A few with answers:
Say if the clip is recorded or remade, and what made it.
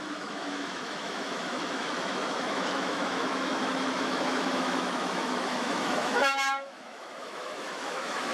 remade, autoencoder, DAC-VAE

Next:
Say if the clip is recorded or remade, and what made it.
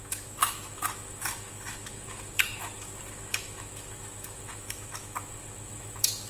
remade, autoencoder, DAC-VAE